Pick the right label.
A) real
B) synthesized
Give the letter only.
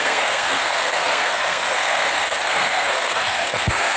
B